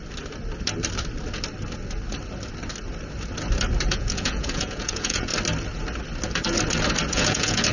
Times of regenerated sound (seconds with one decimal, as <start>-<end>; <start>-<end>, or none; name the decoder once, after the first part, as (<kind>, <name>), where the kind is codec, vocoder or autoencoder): 3.9-5.3 (vocoder, Vocos); 7.1-7.7